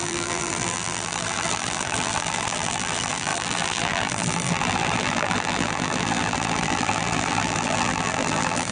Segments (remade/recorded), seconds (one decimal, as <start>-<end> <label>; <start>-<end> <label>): 0.0-8.7 remade